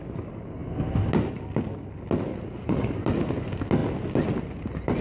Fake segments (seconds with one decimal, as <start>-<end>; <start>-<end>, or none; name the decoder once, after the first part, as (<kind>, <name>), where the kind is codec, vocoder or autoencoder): 2.3-2.9 (vocoder, Vocos)